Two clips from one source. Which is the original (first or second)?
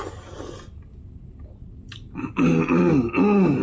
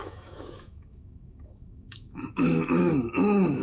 first